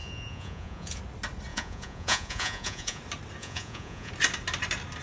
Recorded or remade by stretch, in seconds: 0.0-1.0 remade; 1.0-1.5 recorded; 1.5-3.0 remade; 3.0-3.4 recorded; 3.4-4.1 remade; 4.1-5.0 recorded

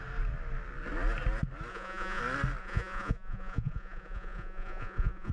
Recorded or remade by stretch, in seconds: 0.0-1.7 recorded; 1.7-2.2 remade; 2.2-2.6 recorded; 2.6-5.3 remade

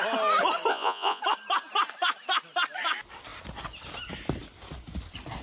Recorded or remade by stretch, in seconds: 0.0-0.7 recorded; 0.7-1.2 remade; 1.2-5.4 recorded

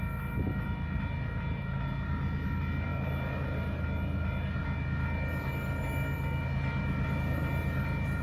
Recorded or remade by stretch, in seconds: 0.0-8.2 recorded

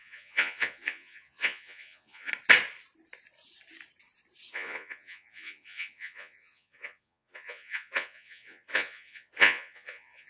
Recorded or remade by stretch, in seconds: 0.0-2.3 remade; 2.3-4.5 recorded; 4.5-10.3 remade